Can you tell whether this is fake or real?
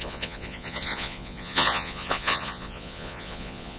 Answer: fake